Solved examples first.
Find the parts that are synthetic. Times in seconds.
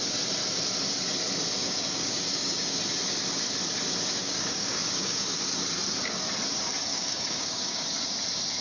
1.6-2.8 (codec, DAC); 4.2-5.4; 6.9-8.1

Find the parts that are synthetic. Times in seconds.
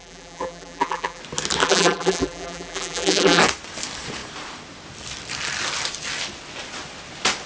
0.0-1.2 (vocoder, BigVGAN v2); 1.6-3.4